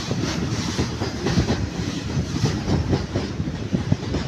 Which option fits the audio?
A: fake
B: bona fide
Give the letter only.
A